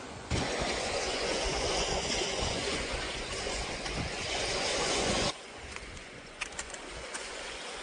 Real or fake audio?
fake